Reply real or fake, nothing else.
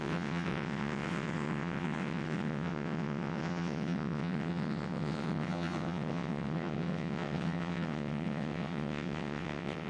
fake